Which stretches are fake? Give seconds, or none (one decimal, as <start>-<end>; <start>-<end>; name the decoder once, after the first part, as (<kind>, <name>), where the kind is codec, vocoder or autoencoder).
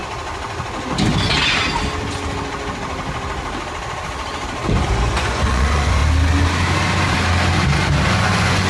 5.0-6.0 (vocoder, Vocos); 8.1-8.7